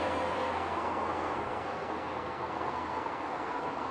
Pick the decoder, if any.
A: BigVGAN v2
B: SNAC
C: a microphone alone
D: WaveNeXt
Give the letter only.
B